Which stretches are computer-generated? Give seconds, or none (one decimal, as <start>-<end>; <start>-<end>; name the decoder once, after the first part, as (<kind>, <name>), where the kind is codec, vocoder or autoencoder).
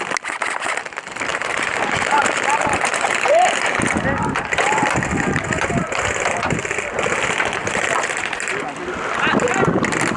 1.3-3.8 (vocoder, BigVGAN v2)